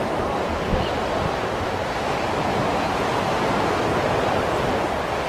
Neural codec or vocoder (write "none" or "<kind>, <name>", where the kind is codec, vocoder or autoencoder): none